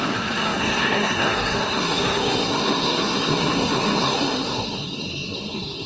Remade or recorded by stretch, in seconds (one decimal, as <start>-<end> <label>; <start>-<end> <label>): 0.0-5.9 remade